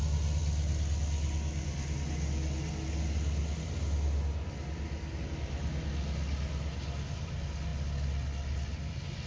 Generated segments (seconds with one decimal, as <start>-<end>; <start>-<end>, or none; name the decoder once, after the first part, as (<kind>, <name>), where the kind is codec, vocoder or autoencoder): none